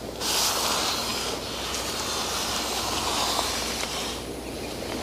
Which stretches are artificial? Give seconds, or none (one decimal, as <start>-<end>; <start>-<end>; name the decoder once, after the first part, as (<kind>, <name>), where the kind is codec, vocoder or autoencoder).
none